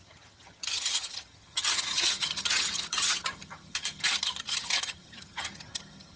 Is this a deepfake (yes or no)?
yes